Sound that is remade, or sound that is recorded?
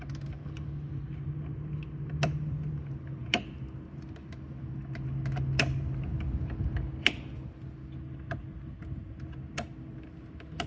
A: recorded